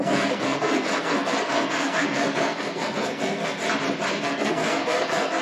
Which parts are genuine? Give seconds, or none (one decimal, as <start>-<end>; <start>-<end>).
3.6-4.1